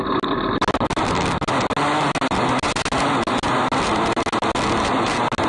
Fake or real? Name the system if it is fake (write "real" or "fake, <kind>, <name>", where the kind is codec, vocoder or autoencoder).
real